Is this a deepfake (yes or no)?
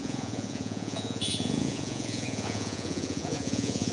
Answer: yes